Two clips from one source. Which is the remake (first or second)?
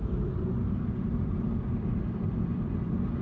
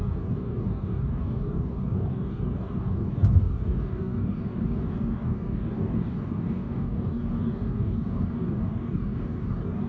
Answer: second